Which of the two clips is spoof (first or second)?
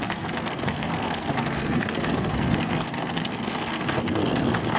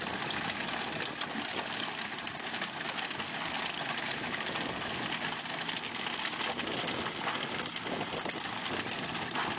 first